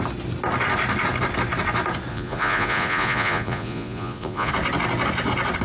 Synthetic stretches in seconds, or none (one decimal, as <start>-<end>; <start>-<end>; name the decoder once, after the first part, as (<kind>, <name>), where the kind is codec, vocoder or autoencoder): 2.1-4.5 (vocoder, Vocos)